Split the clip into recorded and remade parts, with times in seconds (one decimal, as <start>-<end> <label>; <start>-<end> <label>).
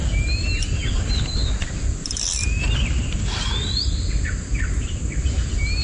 0.0-5.8 recorded